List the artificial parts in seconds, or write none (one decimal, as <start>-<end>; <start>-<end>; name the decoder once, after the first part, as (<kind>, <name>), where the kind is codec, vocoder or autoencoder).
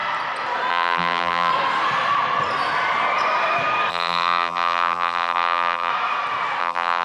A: 0.7-1.5 (vocoder, BigVGAN v2); 3.9-5.9; 6.6-7.0